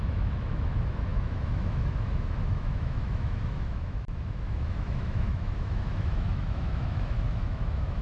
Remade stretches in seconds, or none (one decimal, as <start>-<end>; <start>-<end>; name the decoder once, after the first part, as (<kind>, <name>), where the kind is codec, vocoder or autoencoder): 0.0-8.0 (autoencoder, DAC-VAE)